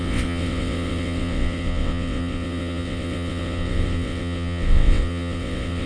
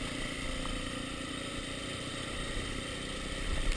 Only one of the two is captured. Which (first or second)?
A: second